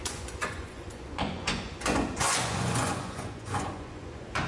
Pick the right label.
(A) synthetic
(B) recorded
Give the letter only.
A